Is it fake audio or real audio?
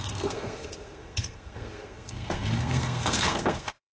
fake